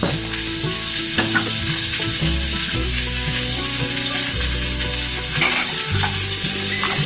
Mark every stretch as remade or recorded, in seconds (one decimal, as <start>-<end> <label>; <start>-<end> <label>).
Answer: 0.0-2.8 recorded; 2.8-3.9 remade; 3.9-7.1 recorded